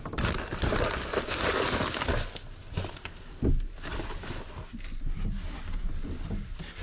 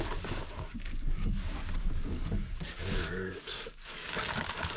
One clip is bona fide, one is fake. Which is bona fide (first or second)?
first